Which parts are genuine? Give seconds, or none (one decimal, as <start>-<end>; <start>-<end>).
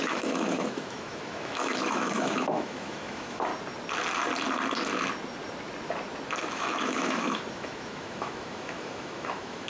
3.5-6.5